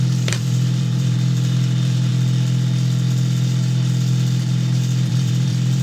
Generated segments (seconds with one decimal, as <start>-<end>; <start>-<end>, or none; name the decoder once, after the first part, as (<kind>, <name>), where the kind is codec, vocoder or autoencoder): 0.0-2.1 (vocoder, BigVGAN v2); 5.1-5.8

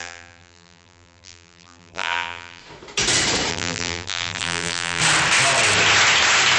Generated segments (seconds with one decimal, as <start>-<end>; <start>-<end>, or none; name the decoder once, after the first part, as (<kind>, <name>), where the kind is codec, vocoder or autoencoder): 0.0-2.6 (vocoder, BigVGAN v2); 3.5-5.0

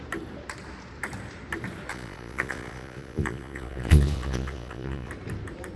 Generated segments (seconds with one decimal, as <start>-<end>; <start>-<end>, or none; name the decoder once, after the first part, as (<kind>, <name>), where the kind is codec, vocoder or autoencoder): 1.9-5.1 (vocoder, Vocos)

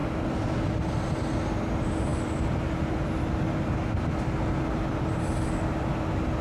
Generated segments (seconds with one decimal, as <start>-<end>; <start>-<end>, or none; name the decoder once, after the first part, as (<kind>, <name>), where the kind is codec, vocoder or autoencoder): none

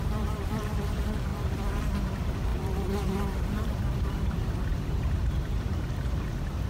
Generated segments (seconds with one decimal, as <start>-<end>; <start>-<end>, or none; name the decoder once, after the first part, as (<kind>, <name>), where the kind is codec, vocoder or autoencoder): 0.0-6.7 (vocoder, BigVGAN v2)

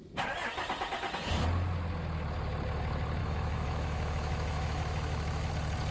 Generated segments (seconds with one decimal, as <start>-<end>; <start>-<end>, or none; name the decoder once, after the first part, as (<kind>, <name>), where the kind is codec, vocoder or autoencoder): 3.2-5.5 (autoencoder, DAC-VAE)

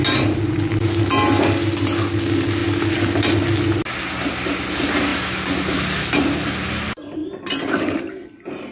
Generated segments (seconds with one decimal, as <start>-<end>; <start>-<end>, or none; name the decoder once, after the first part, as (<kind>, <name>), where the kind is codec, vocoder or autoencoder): none